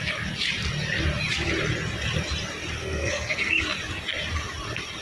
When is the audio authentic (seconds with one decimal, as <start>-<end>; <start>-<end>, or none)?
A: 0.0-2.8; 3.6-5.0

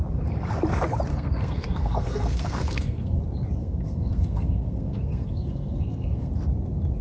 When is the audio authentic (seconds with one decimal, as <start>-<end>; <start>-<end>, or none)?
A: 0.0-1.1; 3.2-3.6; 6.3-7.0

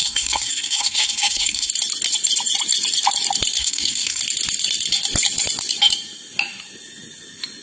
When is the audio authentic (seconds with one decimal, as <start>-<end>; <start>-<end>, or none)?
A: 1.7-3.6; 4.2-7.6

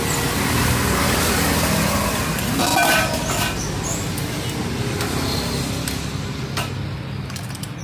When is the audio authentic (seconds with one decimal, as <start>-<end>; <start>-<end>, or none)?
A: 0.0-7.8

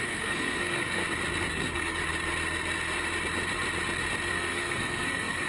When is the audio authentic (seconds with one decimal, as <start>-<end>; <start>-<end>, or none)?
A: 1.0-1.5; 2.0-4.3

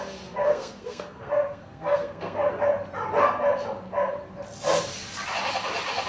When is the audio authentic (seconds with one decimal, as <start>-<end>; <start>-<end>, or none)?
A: 0.0-0.5; 2.5-6.1

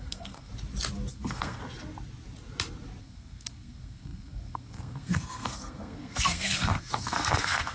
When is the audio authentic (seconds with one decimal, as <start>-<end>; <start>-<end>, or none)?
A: 0.5-1.1; 1.6-3.0